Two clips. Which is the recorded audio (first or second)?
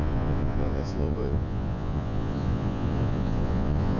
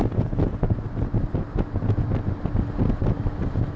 second